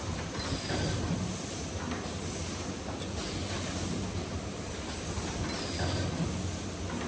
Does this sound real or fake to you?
real